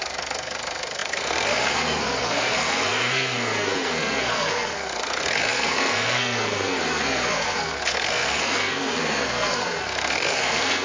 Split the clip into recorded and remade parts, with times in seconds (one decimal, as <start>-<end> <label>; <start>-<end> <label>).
0.0-10.8 remade